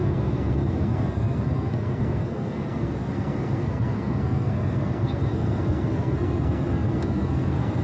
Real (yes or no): no